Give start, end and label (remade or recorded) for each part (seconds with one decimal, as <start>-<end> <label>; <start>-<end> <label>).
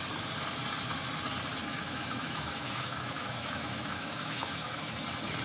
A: 0.0-1.7 recorded; 1.7-4.9 remade; 4.9-5.4 recorded